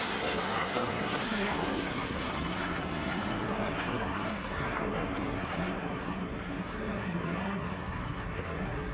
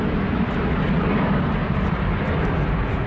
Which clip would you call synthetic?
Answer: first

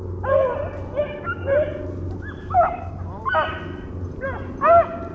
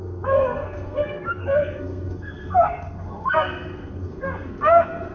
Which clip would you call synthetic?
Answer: second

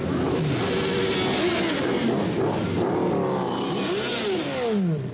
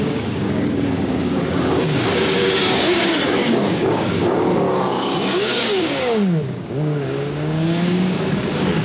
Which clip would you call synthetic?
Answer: second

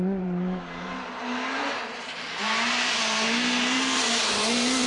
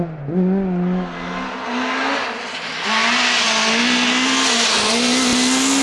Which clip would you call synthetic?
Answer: first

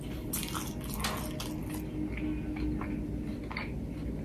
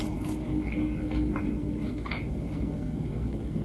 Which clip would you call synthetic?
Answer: second